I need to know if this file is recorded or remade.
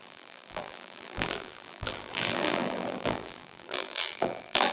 remade